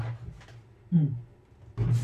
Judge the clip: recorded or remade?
recorded